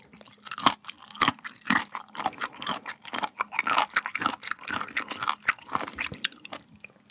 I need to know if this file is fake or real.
real